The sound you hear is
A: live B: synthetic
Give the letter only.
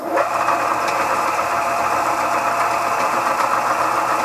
A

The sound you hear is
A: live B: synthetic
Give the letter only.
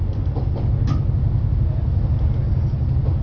A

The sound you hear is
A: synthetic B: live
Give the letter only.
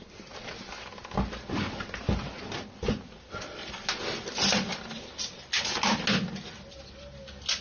B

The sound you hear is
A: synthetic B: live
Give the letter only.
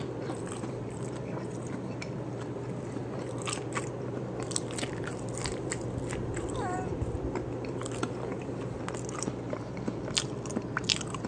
A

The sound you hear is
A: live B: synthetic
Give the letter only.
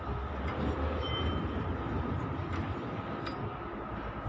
A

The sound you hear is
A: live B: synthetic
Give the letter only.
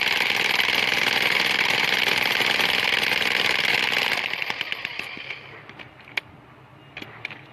A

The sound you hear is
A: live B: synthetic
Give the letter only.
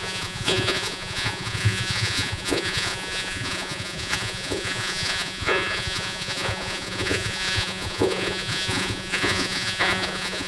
B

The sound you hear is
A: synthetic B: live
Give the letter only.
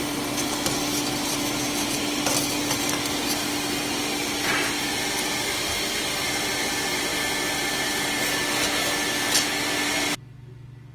B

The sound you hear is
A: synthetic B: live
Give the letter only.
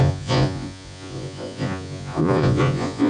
A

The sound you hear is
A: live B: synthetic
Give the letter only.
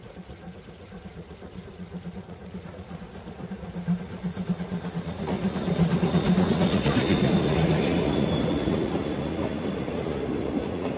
B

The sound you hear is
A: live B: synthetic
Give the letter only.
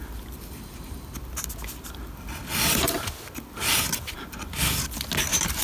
A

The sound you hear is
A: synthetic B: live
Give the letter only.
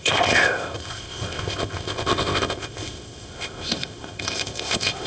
A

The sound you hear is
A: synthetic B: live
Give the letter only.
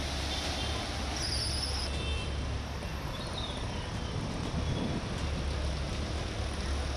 B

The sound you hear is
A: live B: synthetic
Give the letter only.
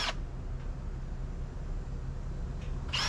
A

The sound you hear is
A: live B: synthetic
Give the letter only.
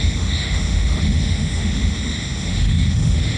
B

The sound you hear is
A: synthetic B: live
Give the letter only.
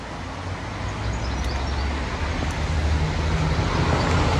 B